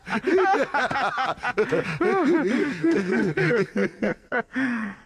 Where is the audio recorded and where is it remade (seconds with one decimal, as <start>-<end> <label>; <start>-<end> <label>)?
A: 0.0-2.6 recorded; 2.6-5.1 remade